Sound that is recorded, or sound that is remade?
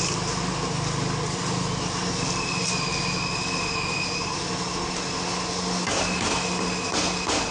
recorded